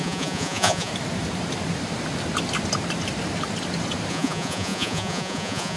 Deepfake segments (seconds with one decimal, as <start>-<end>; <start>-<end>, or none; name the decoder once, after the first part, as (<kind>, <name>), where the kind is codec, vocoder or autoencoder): 0.0-0.9 (vocoder, Vocos); 4.1-5.8

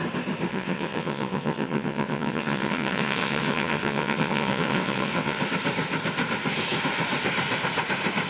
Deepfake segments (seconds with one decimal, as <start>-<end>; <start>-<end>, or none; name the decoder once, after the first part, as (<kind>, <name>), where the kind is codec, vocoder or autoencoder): 0.5-5.4 (vocoder, WaveNeXt)

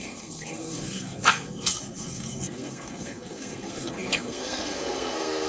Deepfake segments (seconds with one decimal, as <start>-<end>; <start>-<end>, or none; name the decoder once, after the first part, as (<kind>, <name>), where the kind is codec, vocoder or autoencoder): 0.0-5.5 (codec, SNAC)

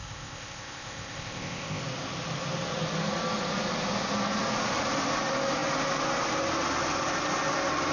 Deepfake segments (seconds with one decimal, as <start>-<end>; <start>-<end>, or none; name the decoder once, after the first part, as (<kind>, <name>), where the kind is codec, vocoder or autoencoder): 0.0-1.8 (codec, ZipCodec)